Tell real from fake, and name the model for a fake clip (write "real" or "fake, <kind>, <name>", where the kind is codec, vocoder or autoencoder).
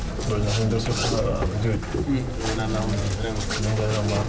real